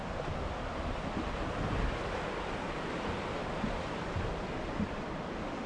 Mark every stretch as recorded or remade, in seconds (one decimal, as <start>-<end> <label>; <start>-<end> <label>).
0.0-5.7 recorded

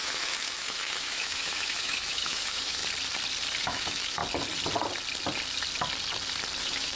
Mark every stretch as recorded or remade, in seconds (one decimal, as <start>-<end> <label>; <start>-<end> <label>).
0.0-2.8 remade; 2.8-3.6 recorded; 3.6-4.2 remade; 4.2-6.6 recorded; 6.6-7.0 remade

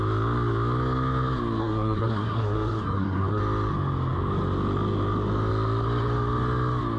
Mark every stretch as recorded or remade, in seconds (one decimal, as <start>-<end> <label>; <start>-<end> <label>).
0.0-1.6 recorded; 1.6-3.4 remade; 3.4-7.0 recorded